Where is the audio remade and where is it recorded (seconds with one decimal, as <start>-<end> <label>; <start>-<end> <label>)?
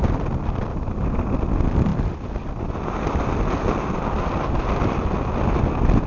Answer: 0.0-6.1 recorded